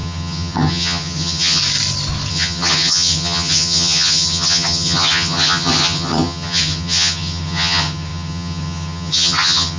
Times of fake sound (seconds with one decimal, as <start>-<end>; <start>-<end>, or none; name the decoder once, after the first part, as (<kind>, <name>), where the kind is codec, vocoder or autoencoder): 0.0-1.6 (vocoder, HiFi-GAN); 2.3-9.8